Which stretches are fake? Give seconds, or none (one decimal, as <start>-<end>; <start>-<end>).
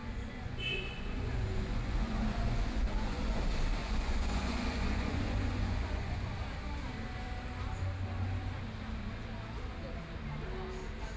0.0-3.4; 3.8-6.3